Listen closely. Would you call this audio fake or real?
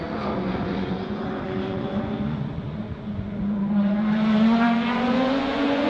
fake